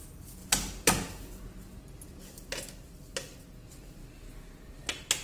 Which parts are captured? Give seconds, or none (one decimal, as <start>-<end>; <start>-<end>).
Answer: 0.0-5.2